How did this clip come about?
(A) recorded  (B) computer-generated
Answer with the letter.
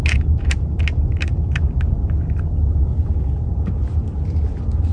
A